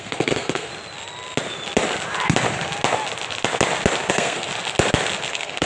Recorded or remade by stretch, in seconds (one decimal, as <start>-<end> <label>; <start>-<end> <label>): 0.0-0.7 remade; 0.7-4.1 recorded; 4.1-4.5 remade; 4.5-5.3 recorded; 5.3-5.7 remade

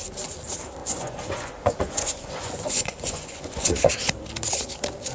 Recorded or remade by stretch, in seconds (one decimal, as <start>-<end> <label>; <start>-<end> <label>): 0.0-0.8 recorded; 0.8-3.9 remade; 3.9-5.1 recorded